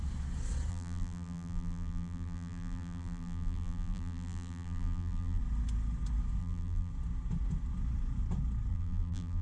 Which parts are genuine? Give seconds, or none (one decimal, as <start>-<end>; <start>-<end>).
0.0-0.7; 5.4-6.4; 6.9-8.7